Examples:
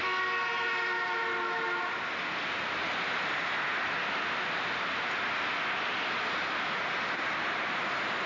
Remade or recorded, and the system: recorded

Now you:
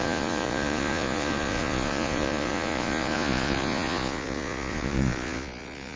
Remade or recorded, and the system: remade, vocoder, Vocos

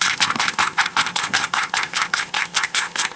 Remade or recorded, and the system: remade, codec, ZipCodec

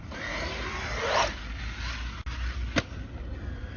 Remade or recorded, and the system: recorded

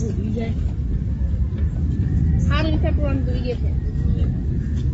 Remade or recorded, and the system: recorded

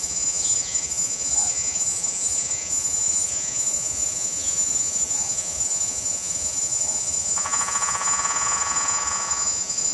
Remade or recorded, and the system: remade, vocoder, Vocos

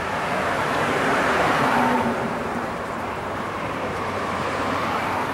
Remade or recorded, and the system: remade, vocoder, BigVGAN v2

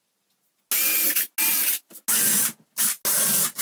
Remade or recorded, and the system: recorded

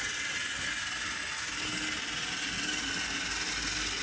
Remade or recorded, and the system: recorded